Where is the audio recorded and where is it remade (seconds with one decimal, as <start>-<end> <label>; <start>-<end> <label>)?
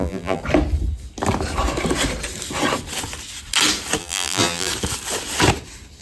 0.0-0.4 remade; 0.4-4.0 recorded; 4.0-4.7 remade; 4.7-6.0 recorded